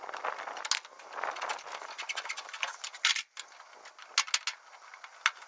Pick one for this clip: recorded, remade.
recorded